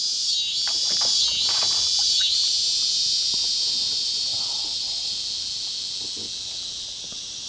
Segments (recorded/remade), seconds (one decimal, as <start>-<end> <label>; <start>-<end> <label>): 0.0-4.3 recorded; 4.3-5.1 remade; 5.1-7.5 recorded